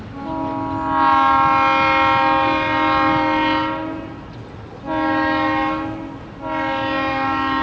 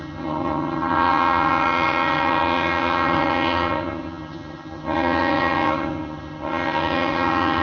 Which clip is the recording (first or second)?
first